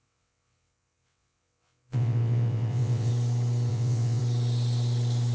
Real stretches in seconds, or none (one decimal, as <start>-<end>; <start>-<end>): 3.1-3.7; 4.2-5.3